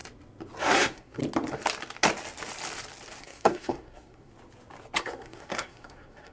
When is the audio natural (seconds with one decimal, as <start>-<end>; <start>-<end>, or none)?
0.0-0.6; 1.2-3.2; 4.3-5.0